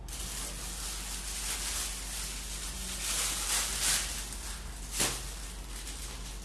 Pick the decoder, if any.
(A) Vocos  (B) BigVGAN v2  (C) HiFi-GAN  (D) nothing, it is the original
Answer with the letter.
D